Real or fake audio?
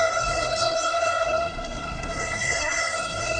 fake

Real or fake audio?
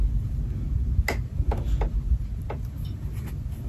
real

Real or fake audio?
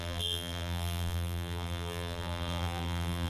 fake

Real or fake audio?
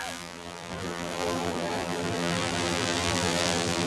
fake